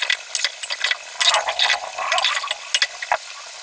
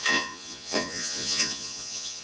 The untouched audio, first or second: first